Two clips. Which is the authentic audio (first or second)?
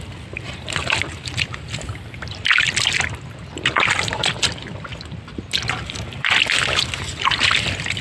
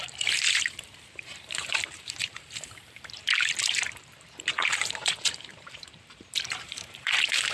first